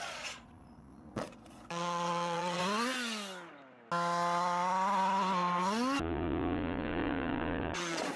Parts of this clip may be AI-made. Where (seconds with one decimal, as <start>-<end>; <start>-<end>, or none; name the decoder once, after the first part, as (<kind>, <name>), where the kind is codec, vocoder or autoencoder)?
0.0-2.6 (vocoder, Vocos); 6.0-8.2